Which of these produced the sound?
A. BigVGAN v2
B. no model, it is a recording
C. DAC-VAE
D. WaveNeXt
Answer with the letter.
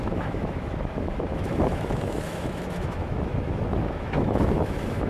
C